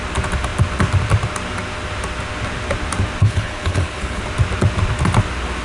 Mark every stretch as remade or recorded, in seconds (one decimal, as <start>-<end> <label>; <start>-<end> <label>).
0.0-3.2 recorded; 3.2-4.2 remade; 4.2-5.6 recorded